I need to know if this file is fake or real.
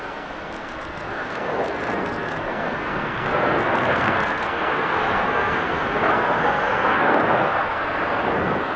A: fake